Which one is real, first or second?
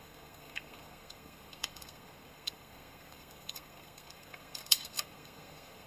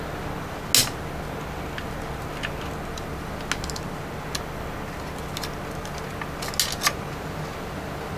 second